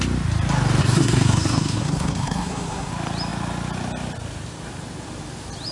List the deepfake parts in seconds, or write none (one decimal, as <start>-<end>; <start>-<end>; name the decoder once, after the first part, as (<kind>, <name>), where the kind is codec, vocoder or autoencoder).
0.8-2.9 (codec, SNAC)